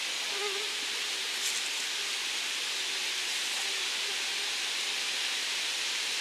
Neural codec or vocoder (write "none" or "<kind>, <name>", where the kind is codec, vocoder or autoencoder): none